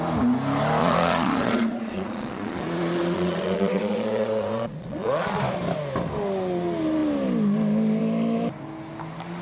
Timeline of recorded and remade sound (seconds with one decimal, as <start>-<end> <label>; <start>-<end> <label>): 0.0-0.8 recorded; 0.8-5.4 remade; 5.4-9.4 recorded

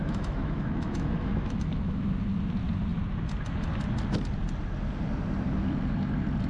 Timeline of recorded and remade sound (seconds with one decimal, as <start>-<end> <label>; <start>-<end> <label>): 0.0-2.0 remade; 2.0-6.5 recorded